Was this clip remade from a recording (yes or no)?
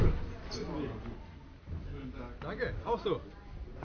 no